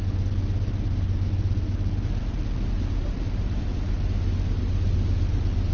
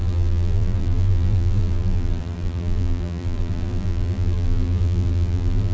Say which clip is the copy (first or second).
second